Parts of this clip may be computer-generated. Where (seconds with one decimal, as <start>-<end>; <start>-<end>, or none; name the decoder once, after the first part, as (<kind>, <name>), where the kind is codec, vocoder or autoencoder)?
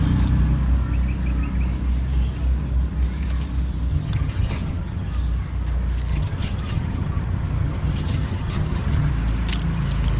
3.9-5.1 (vocoder, HiFi-GAN); 6.1-9.1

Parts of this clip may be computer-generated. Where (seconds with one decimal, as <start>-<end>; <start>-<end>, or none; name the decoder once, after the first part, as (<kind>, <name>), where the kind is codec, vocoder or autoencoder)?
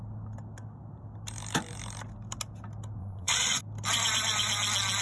3.0-3.6 (vocoder, Vocos)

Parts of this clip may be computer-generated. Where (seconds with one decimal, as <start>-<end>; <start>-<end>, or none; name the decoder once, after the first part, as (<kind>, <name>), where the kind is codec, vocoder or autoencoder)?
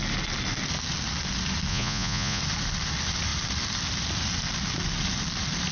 1.7-2.4 (vocoder, Vocos)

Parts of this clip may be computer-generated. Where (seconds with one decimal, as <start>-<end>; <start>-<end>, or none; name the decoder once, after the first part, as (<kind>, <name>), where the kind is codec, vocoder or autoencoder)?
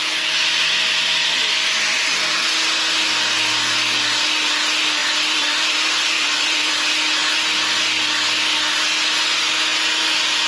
5.0-6.7 (vocoder, BigVGAN v2)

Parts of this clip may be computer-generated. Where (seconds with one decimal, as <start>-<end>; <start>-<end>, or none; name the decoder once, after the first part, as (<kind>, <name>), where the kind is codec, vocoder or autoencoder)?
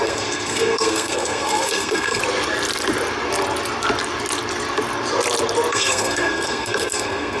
0.0-2.2 (codec, SNAC); 5.7-7.4